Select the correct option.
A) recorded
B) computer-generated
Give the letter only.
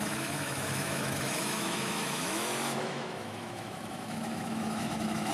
B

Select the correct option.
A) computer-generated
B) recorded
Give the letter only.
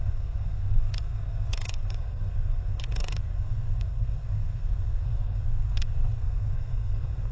A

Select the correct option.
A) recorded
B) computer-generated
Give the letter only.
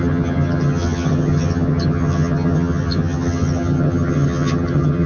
B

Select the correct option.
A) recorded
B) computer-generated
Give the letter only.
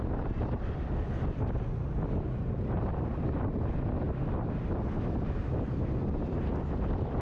A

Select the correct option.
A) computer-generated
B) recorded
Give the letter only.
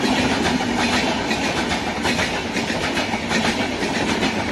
B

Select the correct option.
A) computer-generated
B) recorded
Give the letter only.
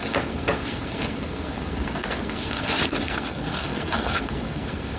A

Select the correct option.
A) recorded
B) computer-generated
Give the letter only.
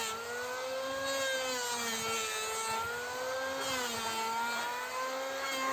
A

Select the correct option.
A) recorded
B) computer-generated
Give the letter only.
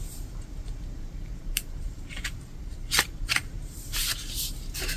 B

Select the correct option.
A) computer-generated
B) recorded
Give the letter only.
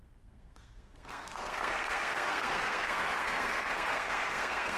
A